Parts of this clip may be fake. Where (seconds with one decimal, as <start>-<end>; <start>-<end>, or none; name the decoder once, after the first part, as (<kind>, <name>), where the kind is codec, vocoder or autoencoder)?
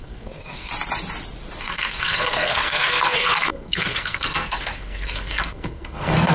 0.0-0.7 (codec, SNAC); 1.6-6.3